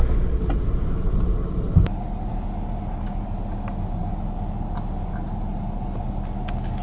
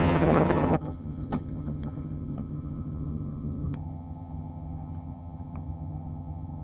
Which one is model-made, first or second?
second